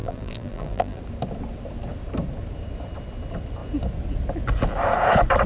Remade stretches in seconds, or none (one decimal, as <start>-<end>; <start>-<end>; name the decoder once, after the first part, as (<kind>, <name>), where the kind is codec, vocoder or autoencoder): 0.0-1.0 (vocoder, BigVGAN v2)